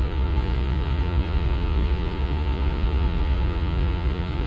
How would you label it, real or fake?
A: fake